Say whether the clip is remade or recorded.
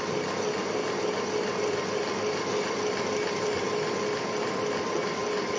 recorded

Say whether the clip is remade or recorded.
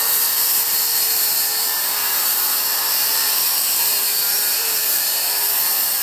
remade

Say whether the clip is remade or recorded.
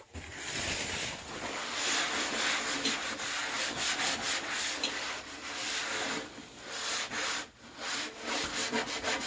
remade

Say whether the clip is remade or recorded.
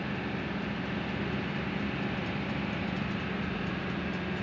recorded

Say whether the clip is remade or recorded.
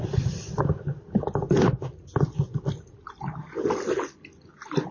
recorded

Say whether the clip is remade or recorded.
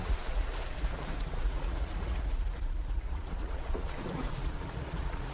remade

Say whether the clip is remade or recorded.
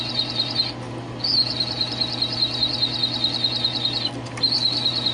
recorded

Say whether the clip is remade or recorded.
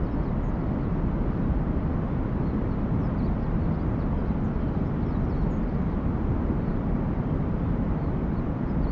recorded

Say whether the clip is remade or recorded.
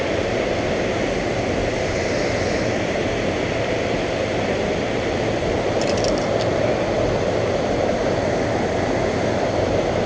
recorded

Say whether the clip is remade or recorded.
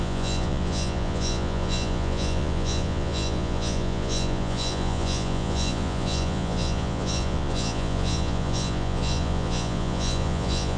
remade